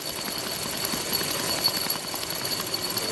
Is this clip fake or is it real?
real